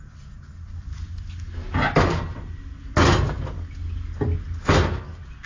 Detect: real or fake real